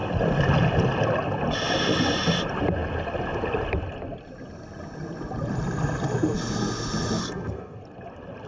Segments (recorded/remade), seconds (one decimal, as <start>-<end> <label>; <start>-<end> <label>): 0.0-7.2 recorded; 7.2-7.8 remade; 7.8-8.5 recorded